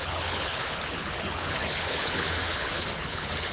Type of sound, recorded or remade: remade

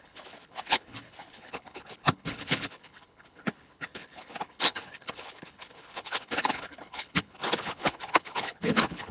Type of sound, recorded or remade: remade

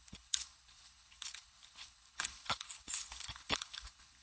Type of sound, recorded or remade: remade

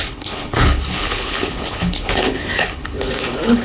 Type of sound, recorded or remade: remade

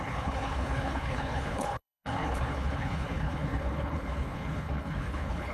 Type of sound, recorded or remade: remade